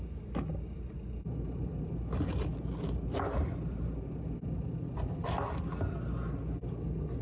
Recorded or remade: recorded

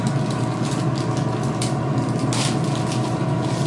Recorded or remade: recorded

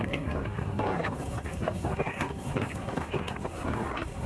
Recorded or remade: remade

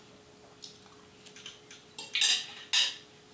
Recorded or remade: recorded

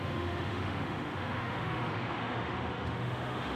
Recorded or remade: remade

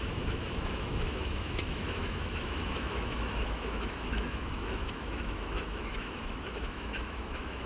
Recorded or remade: remade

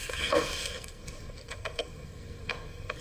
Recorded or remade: remade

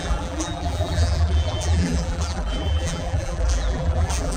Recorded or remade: remade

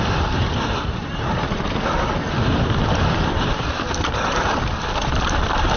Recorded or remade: recorded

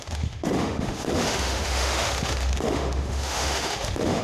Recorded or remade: remade